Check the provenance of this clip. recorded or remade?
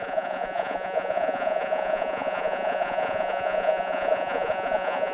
remade